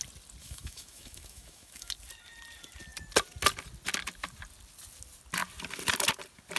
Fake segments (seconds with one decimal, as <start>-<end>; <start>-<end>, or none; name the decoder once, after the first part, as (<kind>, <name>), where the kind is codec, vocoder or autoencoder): 0.4-1.9 (autoencoder, DAC-VAE)